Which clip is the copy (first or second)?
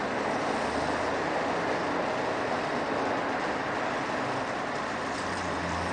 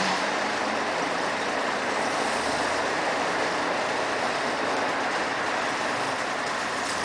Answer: second